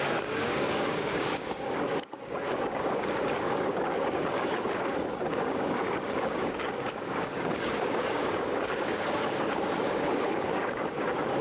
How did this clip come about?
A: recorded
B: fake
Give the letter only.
B